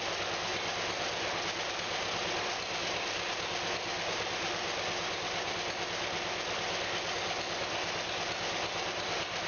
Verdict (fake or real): real